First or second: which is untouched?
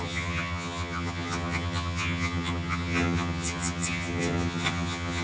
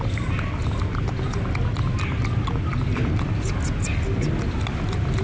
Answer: second